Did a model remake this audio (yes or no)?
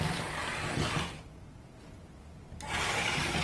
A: no